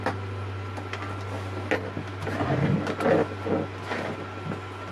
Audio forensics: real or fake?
real